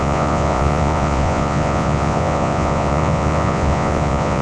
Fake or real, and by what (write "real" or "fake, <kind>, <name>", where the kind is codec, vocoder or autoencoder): fake, vocoder, Vocos